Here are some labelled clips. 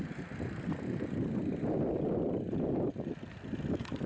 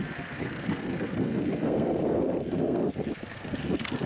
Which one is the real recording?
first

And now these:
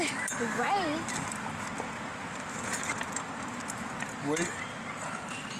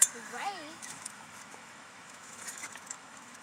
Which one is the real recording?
first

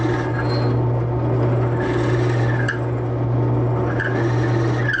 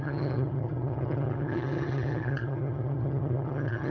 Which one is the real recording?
first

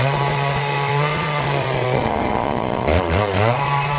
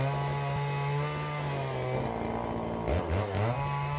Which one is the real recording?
second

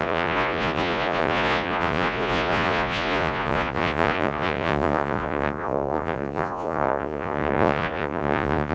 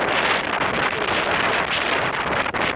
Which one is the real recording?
second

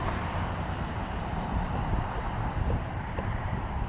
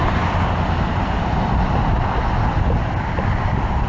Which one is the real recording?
second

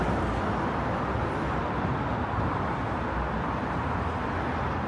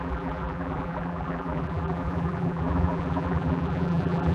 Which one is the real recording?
first